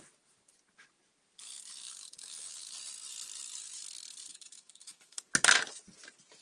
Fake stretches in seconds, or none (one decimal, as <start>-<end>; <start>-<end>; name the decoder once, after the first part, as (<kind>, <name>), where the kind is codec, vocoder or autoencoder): 4.3-5.2 (autoencoder, DAC-VAE)